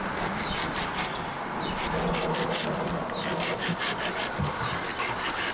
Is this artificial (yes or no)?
no